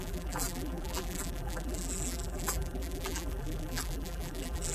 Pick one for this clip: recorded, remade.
remade